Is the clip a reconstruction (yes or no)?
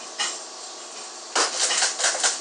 no